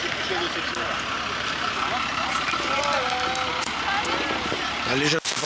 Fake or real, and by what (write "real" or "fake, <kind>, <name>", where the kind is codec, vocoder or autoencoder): real